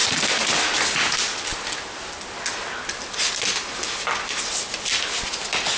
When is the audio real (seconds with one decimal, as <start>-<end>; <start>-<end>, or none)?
0.0-5.8